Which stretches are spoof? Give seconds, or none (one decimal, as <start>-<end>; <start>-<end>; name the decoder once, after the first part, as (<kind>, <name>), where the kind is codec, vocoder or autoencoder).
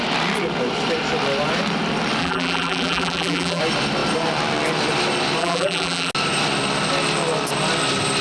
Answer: 2.2-3.6 (vocoder, BigVGAN v2); 5.4-6.1